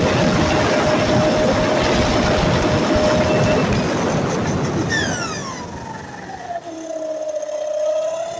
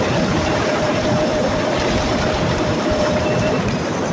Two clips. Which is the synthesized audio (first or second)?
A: second